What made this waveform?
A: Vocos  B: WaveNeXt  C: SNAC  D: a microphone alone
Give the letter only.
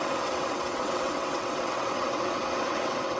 B